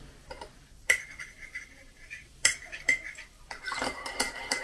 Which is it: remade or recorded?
remade